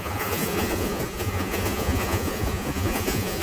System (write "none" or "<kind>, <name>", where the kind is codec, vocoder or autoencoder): vocoder, Vocos